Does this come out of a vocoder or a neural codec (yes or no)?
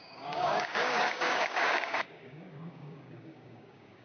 yes